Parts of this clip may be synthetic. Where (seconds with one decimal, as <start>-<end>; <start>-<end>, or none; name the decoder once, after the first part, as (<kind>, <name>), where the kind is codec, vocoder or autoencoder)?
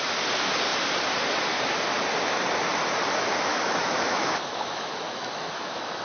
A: 3.5-6.0 (autoencoder, DAC-VAE)